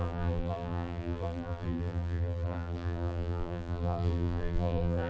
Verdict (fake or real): fake